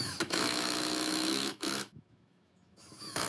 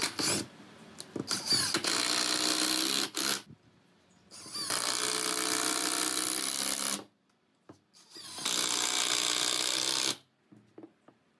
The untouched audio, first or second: second